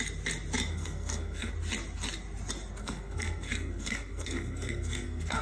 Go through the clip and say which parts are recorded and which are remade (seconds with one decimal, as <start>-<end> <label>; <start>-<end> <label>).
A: 0.0-0.7 recorded; 0.7-1.5 remade; 1.5-2.8 recorded; 2.8-5.4 remade